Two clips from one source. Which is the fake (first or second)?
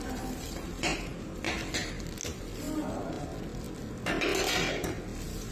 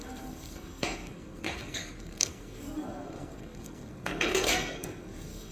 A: second